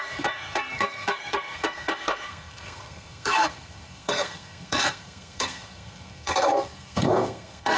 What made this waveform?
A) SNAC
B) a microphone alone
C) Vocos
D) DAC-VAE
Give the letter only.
A